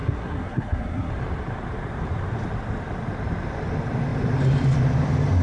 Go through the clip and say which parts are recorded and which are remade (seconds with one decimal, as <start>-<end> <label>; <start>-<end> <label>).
0.0-1.1 remade; 1.1-5.4 recorded